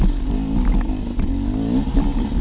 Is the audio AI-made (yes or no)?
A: no